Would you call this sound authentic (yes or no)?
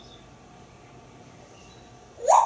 yes